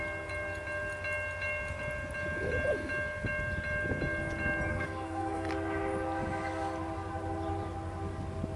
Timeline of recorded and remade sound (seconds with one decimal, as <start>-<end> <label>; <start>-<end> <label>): 0.0-4.7 recorded; 4.7-5.5 remade; 5.5-8.6 recorded